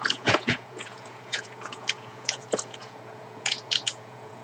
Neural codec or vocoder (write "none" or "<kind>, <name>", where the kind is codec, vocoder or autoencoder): vocoder, Vocos